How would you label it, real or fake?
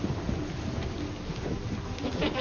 real